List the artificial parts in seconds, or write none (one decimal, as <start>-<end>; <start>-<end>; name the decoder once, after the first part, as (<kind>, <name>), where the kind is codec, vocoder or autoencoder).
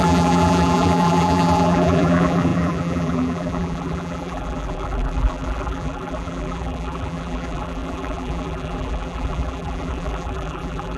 0.0-11.0 (vocoder, BigVGAN v2)